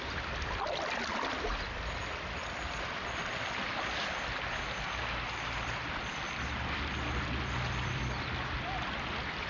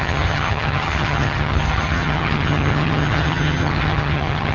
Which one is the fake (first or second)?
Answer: second